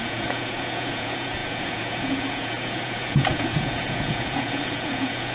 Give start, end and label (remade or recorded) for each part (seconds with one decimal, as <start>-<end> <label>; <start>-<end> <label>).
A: 0.0-5.3 remade